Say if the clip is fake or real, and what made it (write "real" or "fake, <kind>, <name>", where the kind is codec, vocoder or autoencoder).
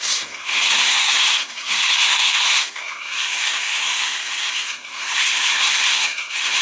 fake, codec, SNAC